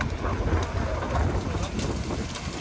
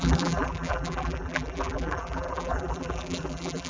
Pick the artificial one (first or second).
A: second